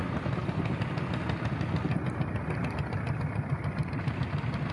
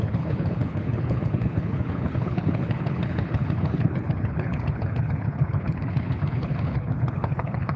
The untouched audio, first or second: first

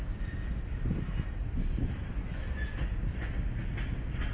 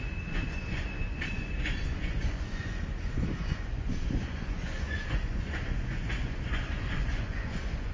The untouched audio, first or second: first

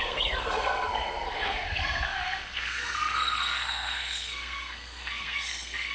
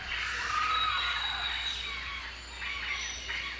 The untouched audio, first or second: second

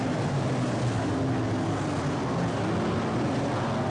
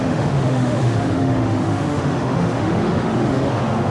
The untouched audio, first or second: first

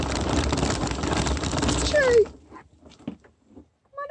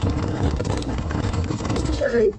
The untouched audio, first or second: first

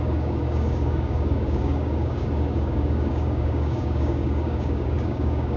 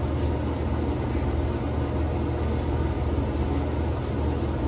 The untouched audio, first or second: second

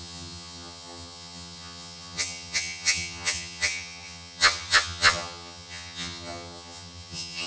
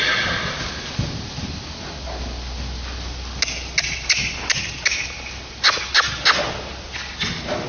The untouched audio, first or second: second